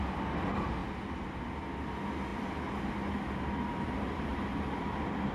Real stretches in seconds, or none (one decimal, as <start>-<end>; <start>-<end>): 0.0-5.3